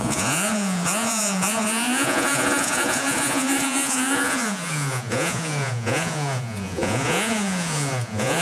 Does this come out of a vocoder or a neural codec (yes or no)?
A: yes